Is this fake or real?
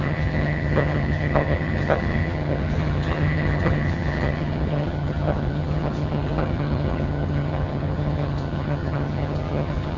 fake